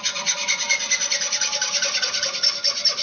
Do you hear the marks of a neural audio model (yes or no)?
no